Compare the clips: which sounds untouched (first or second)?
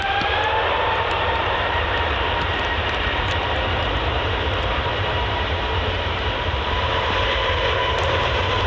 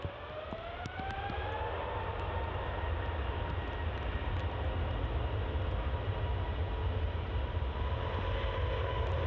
second